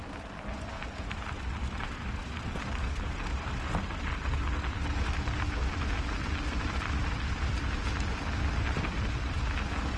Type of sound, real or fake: fake